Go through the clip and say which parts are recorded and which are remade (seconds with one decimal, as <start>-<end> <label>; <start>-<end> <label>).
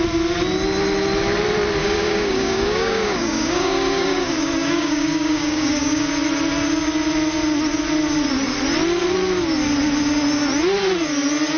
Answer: 0.0-1.8 recorded; 1.8-6.1 remade; 6.1-11.6 recorded